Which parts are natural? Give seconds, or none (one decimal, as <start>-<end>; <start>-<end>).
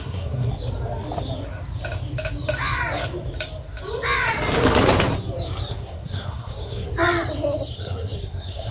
0.5-5.7; 6.9-7.7